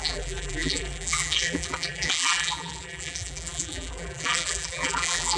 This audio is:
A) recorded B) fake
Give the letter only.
B